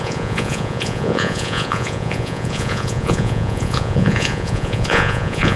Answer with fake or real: fake